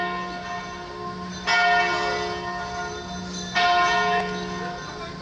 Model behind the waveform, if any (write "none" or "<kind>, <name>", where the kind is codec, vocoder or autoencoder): none